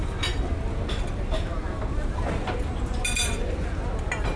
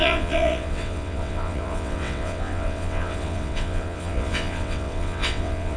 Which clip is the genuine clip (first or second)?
first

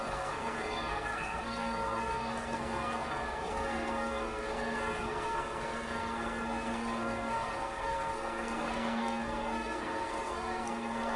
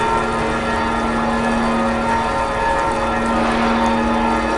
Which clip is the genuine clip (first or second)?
second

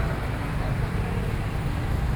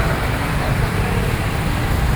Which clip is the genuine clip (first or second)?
first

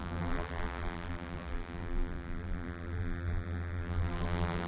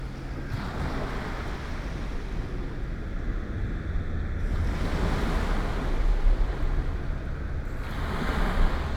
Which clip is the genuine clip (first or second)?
second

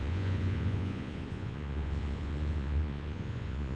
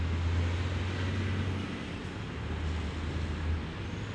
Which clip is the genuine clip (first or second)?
second